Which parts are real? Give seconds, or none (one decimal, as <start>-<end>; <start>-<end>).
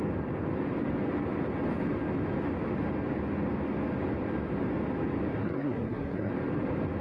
0.0-5.4; 6.3-7.0